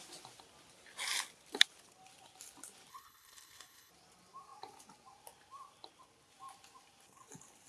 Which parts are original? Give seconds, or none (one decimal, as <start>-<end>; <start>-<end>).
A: 0.0-2.9; 3.9-7.7